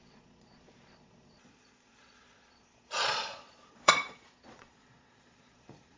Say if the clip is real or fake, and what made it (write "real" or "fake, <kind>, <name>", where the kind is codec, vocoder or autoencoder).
fake, vocoder, Vocos